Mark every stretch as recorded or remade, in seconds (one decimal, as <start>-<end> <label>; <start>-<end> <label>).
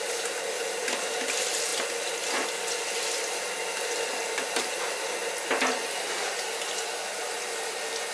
0.0-8.1 recorded